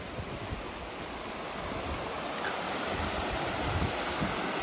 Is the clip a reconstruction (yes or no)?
yes